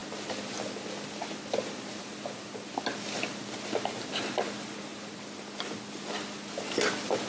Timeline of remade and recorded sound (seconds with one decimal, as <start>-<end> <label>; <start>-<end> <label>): 0.0-7.3 recorded